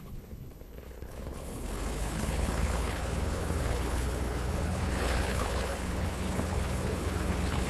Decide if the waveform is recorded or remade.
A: remade